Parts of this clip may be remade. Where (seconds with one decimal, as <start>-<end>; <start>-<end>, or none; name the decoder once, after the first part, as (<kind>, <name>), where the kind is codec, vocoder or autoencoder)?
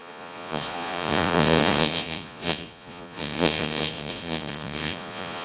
0.0-5.4 (vocoder, Vocos)